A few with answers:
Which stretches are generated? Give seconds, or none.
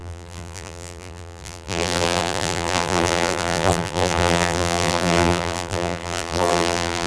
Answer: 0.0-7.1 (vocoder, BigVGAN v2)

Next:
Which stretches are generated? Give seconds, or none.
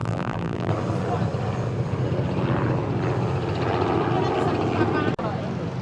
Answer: 0.0-0.7 (vocoder, BigVGAN v2)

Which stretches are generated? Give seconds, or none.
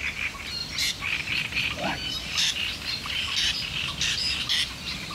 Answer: 0.6-3.7 (vocoder, BigVGAN v2)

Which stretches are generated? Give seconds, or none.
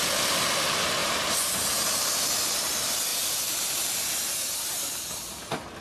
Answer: 1.0-2.2 (vocoder, BigVGAN v2); 3.1-4.3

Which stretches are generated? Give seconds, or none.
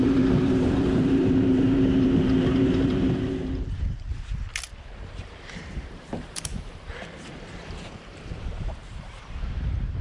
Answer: 0.0-4.5 (vocoder, BigVGAN v2); 5.0-10.0